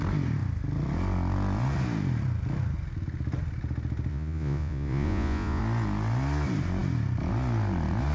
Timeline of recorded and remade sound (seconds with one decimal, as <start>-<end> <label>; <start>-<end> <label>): 0.0-4.1 recorded; 4.1-5.6 remade; 5.6-8.1 recorded